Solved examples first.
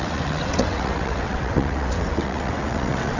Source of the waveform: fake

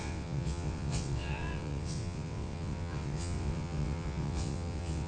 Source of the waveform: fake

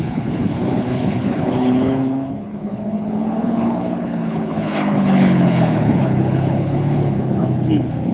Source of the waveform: fake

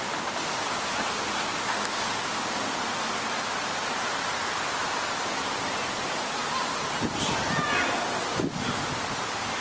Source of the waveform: real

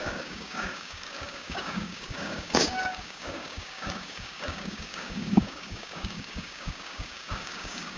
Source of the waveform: fake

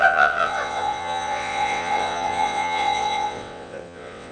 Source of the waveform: fake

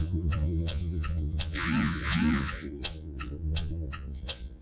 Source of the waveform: fake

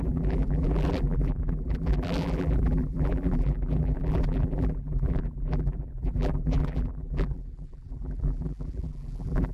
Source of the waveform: fake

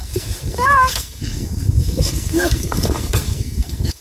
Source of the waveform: fake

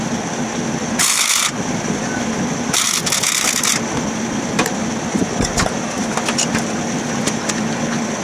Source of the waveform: fake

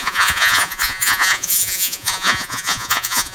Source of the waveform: fake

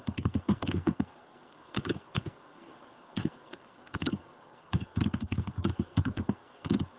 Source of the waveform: fake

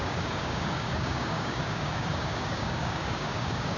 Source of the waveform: fake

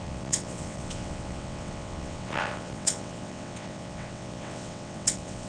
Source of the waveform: fake